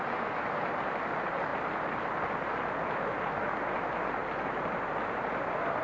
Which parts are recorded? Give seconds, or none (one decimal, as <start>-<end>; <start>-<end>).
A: 0.0-5.8